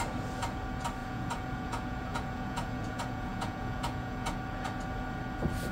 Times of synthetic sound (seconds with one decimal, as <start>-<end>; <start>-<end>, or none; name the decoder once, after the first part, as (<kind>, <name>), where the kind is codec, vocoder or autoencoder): 1.0-4.4 (vocoder, Vocos)